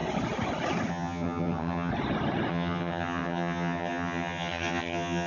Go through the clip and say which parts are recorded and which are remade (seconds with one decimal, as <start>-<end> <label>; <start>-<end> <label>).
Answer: 0.0-0.9 recorded; 0.9-1.9 remade; 1.9-2.5 recorded; 2.5-5.3 remade